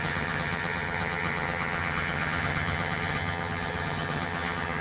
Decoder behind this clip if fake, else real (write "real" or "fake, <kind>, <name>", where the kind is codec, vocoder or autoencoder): fake, vocoder, HiFi-GAN